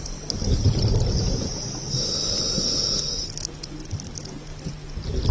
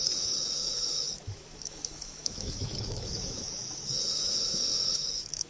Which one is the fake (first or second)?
second